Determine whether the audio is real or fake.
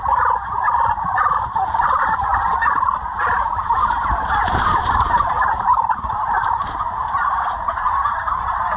real